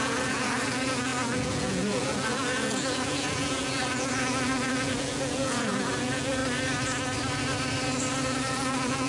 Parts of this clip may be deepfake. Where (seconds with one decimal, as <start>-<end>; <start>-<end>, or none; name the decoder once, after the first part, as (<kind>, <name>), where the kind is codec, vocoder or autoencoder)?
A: 0.0-6.4 (vocoder, Vocos); 8.5-9.1